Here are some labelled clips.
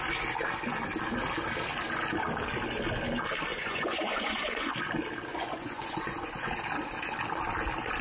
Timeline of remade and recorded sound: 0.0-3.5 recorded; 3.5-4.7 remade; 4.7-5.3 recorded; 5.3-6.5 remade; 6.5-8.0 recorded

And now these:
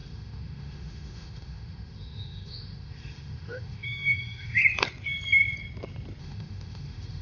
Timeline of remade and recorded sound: 0.0-4.6 remade; 4.6-6.2 recorded; 6.2-7.2 remade

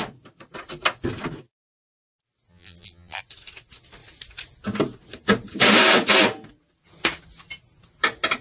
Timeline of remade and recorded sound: 0.0-2.5 recorded; 2.5-3.2 remade; 3.2-8.4 recorded